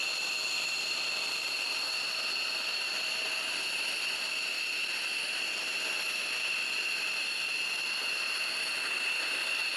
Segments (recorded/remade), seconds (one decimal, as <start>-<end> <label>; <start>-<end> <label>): 0.0-1.7 remade; 1.7-9.8 recorded